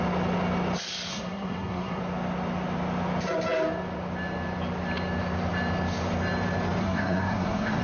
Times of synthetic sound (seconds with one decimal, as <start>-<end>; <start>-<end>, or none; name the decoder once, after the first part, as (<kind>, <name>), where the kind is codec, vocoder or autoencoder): 1.1-2.0 (codec, SNAC); 6.8-7.8